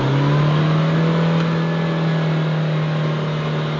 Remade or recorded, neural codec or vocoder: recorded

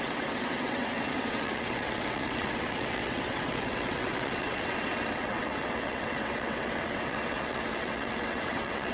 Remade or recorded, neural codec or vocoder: remade, vocoder, WaveNeXt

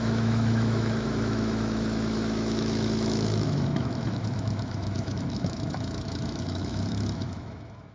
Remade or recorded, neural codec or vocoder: remade, autoencoder, DAC-VAE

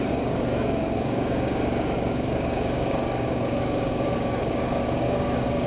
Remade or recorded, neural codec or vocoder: remade, codec, DAC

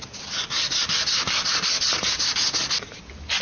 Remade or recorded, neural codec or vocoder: recorded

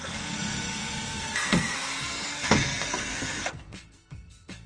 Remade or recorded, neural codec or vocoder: remade, codec, SNAC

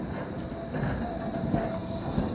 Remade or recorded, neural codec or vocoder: recorded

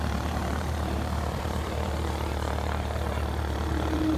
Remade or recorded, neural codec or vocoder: remade, vocoder, BigVGAN v2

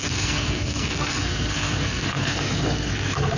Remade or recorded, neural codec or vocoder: remade, codec, SNAC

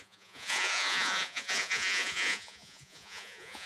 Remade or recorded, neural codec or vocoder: remade, vocoder, Vocos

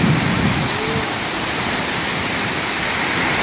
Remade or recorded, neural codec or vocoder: recorded